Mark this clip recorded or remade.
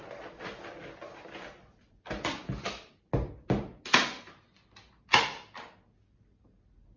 recorded